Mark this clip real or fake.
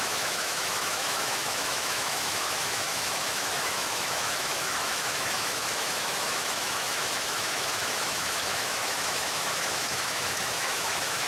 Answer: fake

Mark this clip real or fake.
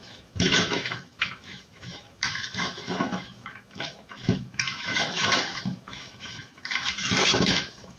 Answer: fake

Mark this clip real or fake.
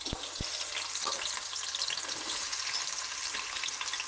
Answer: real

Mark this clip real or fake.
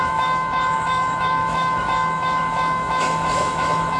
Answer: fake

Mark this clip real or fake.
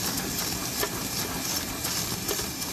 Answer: real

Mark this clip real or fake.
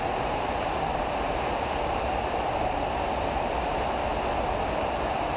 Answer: real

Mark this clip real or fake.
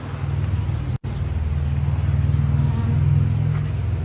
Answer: real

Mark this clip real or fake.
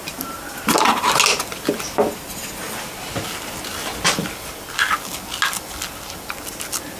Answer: real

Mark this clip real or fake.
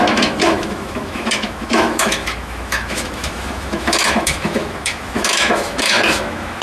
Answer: fake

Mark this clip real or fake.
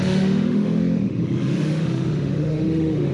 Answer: fake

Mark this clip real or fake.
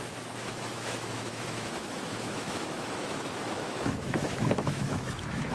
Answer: fake